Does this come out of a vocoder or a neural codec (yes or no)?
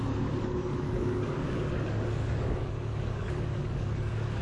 yes